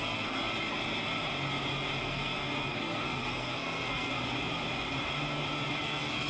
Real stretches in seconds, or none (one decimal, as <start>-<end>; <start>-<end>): 0.4-2.0; 4.1-5.8